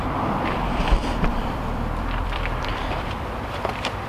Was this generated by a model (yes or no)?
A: yes